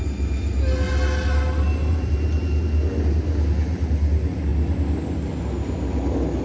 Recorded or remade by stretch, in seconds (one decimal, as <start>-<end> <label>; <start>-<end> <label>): 0.0-1.8 recorded; 1.8-2.6 remade; 2.6-6.4 recorded

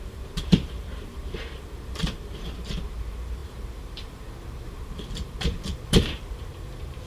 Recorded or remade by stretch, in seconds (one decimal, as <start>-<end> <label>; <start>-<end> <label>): 0.0-7.1 remade

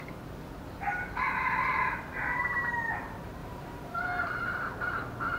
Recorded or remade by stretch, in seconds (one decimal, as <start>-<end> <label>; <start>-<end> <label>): 0.0-3.4 recorded; 3.4-4.0 remade; 4.0-5.4 recorded

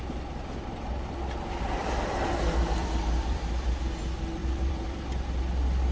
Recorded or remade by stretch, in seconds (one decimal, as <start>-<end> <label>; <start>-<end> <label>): 0.0-1.8 recorded; 1.8-3.7 remade; 3.7-4.4 recorded; 4.4-5.0 remade; 5.0-5.9 recorded